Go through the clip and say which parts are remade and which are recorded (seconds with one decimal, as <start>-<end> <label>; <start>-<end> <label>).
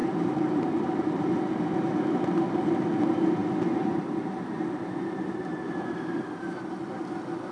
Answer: 0.0-1.3 remade; 1.3-7.5 recorded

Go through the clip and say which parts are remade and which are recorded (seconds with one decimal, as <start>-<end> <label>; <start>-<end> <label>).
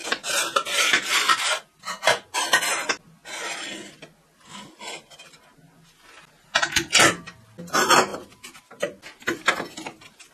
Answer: 0.0-1.5 remade; 1.5-10.3 recorded